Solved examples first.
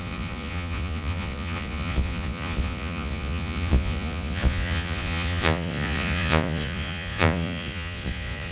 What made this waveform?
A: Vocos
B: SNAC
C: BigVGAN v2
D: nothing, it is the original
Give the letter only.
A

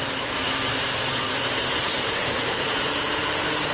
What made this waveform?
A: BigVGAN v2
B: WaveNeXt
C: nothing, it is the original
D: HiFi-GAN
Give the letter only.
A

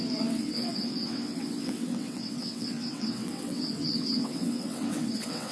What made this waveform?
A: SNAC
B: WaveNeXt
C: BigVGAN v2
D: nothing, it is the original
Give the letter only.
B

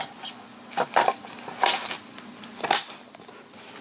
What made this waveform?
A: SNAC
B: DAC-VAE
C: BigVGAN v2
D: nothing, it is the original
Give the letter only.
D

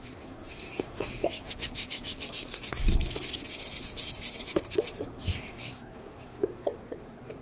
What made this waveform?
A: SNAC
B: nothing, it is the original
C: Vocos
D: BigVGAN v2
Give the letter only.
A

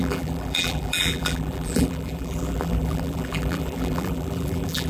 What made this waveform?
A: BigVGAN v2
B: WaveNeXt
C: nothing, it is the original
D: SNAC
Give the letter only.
A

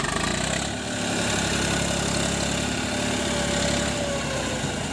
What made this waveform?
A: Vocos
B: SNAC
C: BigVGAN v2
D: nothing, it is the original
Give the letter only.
D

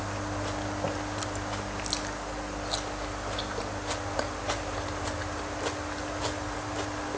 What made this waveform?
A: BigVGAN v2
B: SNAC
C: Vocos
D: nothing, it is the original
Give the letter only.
D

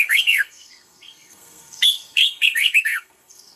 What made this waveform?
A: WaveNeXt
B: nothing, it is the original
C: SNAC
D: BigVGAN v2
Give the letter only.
C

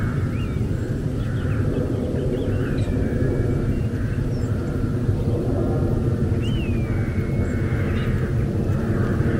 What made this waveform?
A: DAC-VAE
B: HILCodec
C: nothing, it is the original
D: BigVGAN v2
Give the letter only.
C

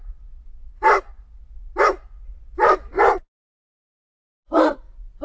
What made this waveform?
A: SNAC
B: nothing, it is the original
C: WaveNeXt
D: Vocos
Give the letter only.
B